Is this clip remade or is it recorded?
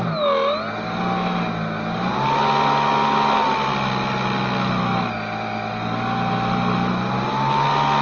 recorded